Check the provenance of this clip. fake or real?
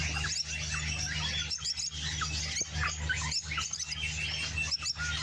real